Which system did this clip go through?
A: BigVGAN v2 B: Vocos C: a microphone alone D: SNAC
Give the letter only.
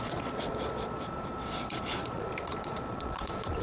B